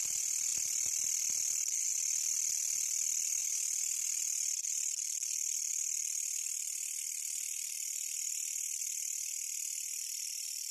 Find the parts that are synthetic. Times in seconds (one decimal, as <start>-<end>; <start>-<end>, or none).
none